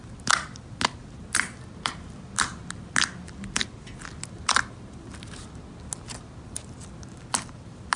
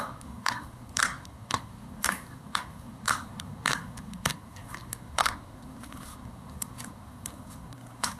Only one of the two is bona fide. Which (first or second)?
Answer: first